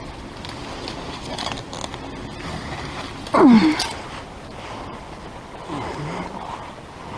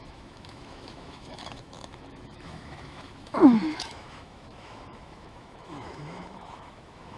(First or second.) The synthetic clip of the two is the second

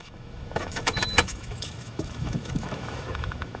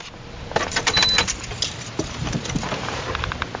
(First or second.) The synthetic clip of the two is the first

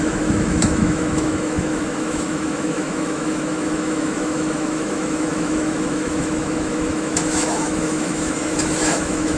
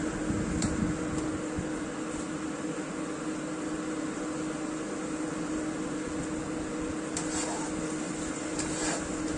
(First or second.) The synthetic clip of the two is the first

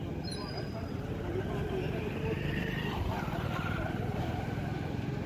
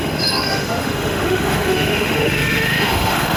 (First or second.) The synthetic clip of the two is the second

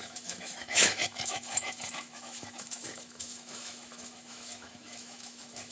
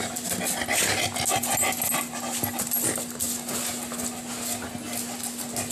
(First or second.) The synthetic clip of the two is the first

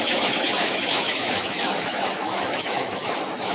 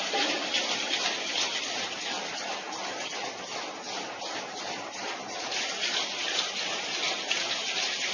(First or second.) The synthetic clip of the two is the first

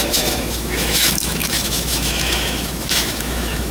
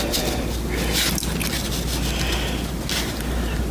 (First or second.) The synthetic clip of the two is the first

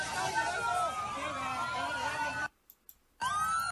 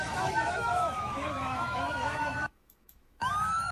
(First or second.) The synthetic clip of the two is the second